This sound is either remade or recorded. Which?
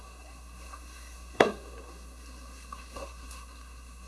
remade